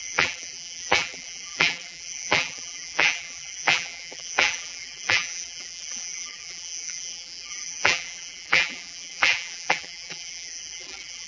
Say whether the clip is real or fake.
fake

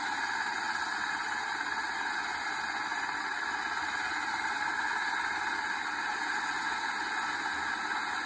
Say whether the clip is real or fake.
real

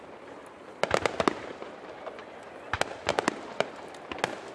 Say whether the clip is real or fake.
real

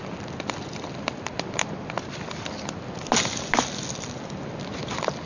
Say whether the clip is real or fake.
real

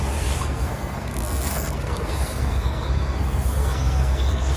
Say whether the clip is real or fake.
fake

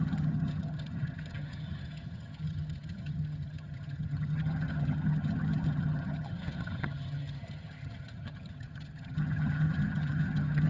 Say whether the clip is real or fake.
fake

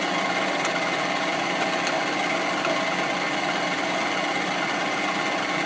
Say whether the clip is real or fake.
real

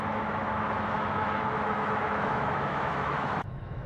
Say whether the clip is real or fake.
fake